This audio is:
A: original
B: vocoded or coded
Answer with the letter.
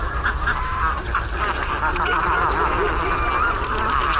A